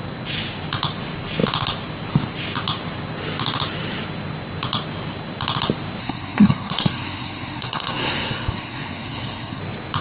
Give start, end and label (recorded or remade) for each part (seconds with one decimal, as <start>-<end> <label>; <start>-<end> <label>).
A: 0.0-6.0 recorded; 6.0-9.6 remade; 9.6-10.0 recorded